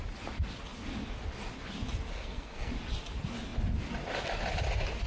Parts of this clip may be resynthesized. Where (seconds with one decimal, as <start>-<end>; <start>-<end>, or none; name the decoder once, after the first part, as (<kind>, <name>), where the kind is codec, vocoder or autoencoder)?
2.1-2.7 (codec, SNAC)